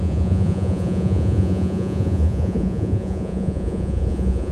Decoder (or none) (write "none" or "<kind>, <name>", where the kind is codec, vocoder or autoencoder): vocoder, Vocos